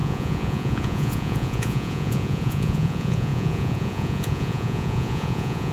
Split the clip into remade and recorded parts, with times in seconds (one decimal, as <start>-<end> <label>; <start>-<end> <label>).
0.0-5.7 remade

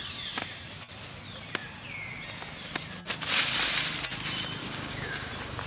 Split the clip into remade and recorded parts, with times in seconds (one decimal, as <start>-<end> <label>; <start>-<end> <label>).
0.0-4.6 recorded; 4.6-5.3 remade; 5.3-5.7 recorded

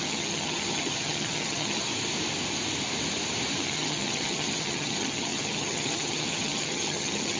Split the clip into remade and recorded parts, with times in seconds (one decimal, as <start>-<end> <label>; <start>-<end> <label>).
0.0-1.9 remade; 1.9-3.6 recorded; 3.6-7.4 remade

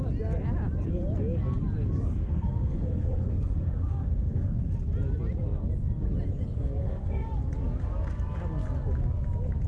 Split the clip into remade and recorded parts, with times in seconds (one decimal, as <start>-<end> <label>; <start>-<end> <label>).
0.0-2.1 recorded; 2.1-4.7 remade; 4.7-6.8 recorded; 6.8-7.3 remade; 7.3-9.7 recorded